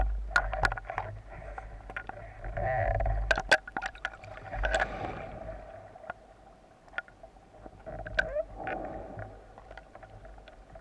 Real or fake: real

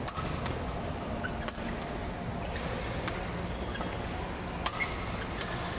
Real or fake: real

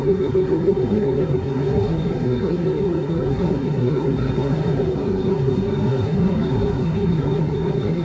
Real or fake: fake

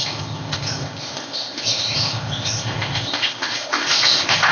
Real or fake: fake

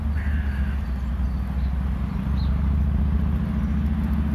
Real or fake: real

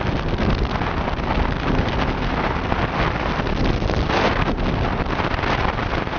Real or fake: real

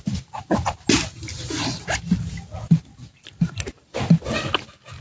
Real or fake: real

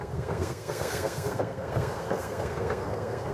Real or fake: fake